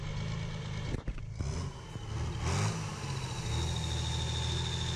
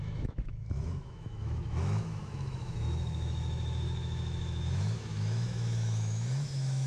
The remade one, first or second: second